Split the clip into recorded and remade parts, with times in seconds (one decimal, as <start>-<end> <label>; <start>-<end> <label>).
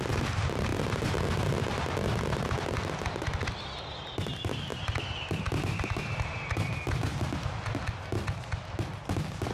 0.0-0.7 recorded; 0.7-3.2 remade; 3.2-4.7 recorded; 4.7-7.0 remade; 7.0-9.5 recorded